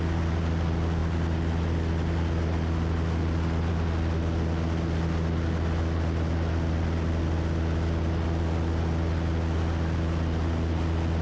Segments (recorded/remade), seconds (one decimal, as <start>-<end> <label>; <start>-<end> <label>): 0.0-11.2 recorded